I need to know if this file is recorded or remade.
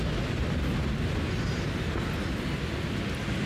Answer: recorded